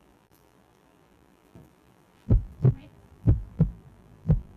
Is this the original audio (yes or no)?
no